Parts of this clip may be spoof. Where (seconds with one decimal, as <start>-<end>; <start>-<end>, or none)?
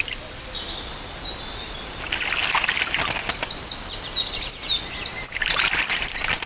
none